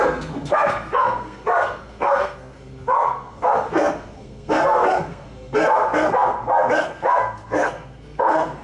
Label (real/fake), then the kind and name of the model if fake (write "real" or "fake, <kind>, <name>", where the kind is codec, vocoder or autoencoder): fake, codec, SNAC